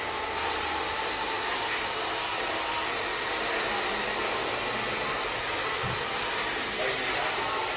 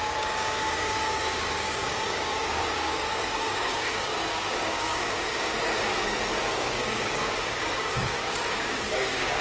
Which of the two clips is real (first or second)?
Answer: first